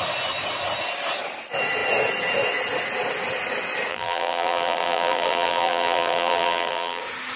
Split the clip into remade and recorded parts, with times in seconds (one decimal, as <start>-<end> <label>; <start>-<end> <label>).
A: 0.0-3.9 recorded; 3.9-7.0 remade; 7.0-7.4 recorded